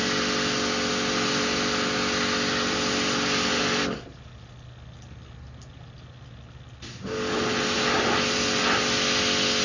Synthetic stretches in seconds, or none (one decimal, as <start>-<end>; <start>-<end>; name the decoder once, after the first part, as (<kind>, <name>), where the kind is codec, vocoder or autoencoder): none